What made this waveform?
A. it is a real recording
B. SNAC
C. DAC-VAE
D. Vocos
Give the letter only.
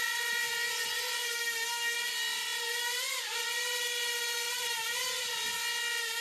A